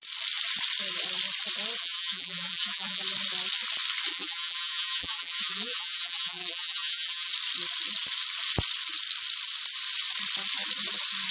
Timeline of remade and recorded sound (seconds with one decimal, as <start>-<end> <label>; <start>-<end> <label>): 0.0-1.8 recorded; 1.8-3.0 remade; 3.0-4.1 recorded; 4.1-7.3 remade; 7.3-11.3 recorded